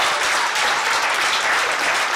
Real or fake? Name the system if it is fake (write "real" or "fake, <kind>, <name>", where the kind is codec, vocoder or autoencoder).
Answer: real